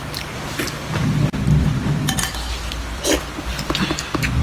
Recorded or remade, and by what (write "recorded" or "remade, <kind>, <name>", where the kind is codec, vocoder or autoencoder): recorded